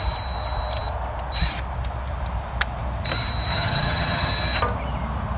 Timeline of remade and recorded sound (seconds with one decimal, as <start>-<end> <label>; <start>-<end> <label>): 0.0-3.5 recorded; 3.5-4.3 remade; 4.3-5.4 recorded